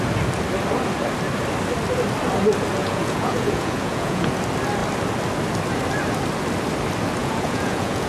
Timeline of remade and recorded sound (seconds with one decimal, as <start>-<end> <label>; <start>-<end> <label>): 0.0-2.8 recorded; 2.8-4.3 remade; 4.3-7.2 recorded; 7.2-8.1 remade